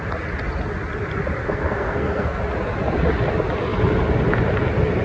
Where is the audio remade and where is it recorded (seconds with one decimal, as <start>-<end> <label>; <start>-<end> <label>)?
0.0-1.4 recorded; 1.4-2.4 remade; 2.4-5.0 recorded